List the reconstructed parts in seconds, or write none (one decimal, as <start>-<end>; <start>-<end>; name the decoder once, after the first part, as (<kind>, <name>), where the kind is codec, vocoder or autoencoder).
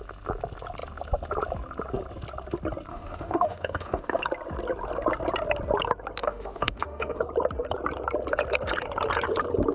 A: 2.9-4.2 (autoencoder, DAC-VAE); 6.2-7.2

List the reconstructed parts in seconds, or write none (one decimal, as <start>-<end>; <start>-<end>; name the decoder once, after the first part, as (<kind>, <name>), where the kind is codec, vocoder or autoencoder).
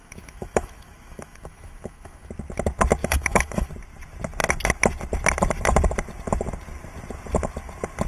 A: 0.0-2.3 (autoencoder, DAC-VAE); 3.0-3.7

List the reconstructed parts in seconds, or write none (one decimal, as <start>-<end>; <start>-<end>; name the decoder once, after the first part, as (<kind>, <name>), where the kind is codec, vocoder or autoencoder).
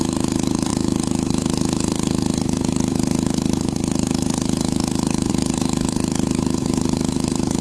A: 0.0-7.6 (autoencoder, DAC-VAE)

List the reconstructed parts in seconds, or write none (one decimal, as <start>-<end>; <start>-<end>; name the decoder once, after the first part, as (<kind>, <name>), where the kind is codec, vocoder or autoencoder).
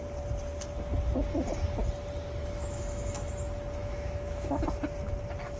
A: 2.4-3.3 (autoencoder, DAC-VAE); 3.8-4.6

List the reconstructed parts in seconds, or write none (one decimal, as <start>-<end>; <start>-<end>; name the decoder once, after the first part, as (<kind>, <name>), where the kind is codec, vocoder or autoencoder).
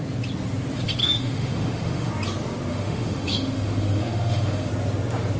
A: 1.0-2.1 (autoencoder, DAC-VAE); 2.7-4.7